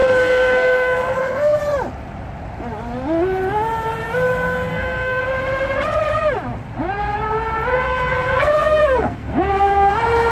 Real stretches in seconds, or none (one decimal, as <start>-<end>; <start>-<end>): 1.6-4.7; 5.2-7.7; 9.9-10.3